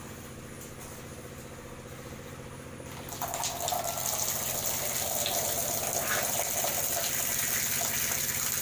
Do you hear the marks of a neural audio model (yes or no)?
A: no